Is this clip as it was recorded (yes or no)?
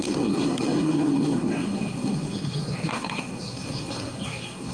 no